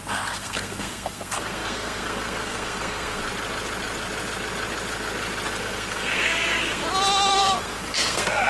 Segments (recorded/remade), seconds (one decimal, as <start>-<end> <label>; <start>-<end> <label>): 0.0-3.2 remade; 3.2-5.6 recorded; 5.6-6.8 remade; 6.8-7.3 recorded; 7.3-8.5 remade